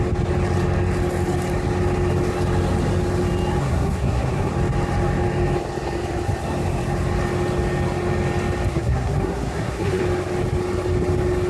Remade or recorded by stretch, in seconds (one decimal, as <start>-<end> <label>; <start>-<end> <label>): 0.0-3.6 recorded; 3.6-4.5 remade; 4.5-8.7 recorded; 8.7-10.0 remade; 10.0-11.5 recorded